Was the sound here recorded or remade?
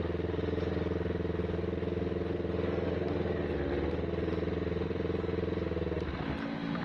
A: recorded